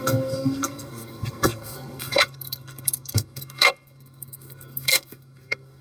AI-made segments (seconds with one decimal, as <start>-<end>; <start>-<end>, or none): 0.0-5.8